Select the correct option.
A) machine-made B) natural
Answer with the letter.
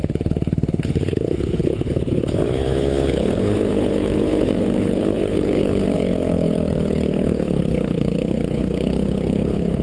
A